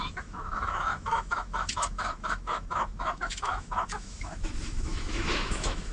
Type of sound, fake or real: fake